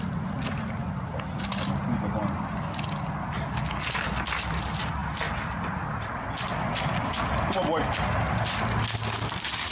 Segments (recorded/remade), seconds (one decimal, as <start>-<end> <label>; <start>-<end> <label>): 0.0-9.7 recorded